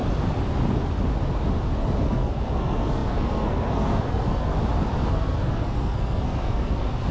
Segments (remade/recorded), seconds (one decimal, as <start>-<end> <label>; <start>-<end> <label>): 0.0-2.1 recorded; 2.1-4.5 remade; 4.5-5.1 recorded; 5.1-7.1 remade